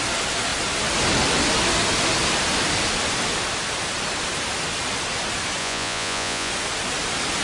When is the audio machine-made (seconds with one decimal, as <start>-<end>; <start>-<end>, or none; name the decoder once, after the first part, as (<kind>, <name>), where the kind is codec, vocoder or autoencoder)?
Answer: 5.6-6.5 (vocoder, Vocos)